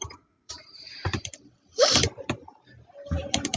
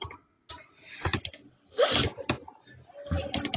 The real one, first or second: second